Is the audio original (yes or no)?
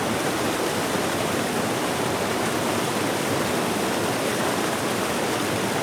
no